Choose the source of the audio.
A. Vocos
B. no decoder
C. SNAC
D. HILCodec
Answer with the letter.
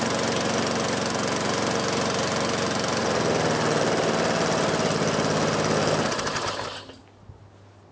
B